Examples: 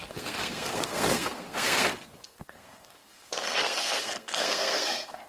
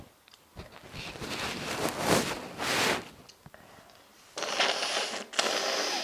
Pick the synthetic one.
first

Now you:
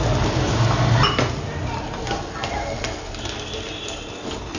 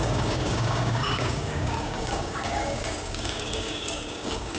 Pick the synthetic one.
second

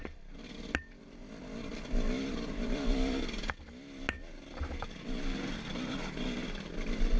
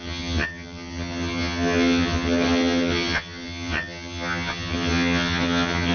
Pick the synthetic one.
second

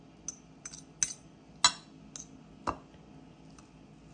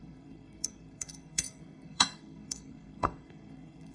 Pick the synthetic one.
second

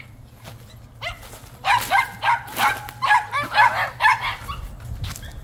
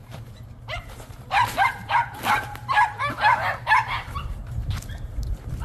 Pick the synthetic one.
second